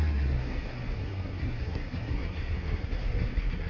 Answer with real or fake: fake